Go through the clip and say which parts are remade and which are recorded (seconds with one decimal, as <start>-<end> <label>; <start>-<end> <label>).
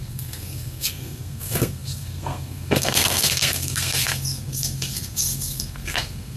0.0-6.4 remade